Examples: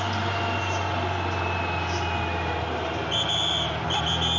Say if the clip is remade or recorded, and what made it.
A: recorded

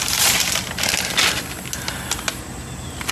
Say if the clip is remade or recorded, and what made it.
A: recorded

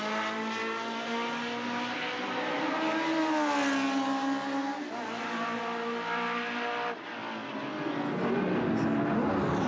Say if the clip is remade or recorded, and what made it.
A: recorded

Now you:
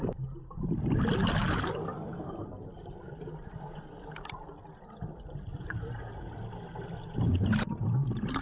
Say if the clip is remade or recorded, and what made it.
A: recorded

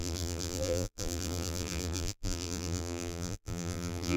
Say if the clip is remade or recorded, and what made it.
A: remade, vocoder, BigVGAN v2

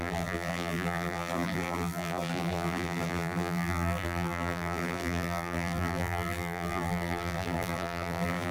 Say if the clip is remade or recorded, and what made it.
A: remade, vocoder, BigVGAN v2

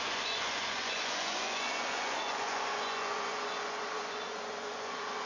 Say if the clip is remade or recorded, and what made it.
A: remade, vocoder, Vocos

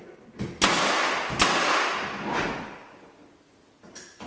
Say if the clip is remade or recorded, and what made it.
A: recorded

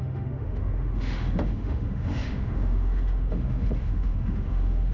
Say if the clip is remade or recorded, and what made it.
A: remade, autoencoder, DAC-VAE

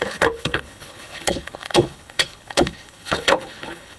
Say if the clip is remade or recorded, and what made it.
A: remade, codec, HILCodec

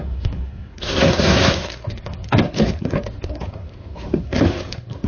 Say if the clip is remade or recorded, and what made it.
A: remade, codec, SNAC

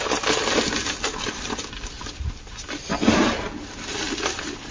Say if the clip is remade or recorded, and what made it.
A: recorded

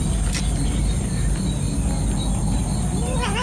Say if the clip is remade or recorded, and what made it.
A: recorded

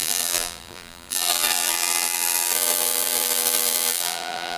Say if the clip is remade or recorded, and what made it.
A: remade, vocoder, BigVGAN v2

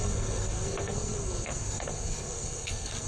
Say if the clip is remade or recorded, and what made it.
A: remade, codec, SNAC